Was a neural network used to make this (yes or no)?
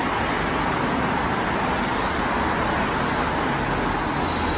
no